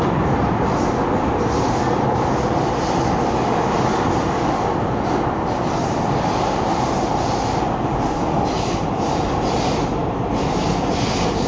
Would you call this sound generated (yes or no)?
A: no